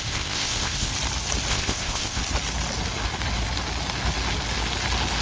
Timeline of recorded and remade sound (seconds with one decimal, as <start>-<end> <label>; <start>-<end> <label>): 0.0-0.9 remade; 0.9-1.5 recorded; 1.5-2.2 remade; 2.2-5.2 recorded